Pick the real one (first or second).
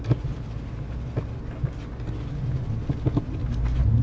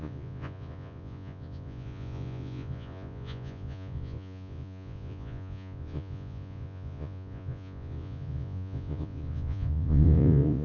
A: first